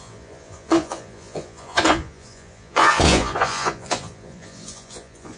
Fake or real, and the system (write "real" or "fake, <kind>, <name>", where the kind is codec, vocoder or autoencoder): fake, vocoder, Vocos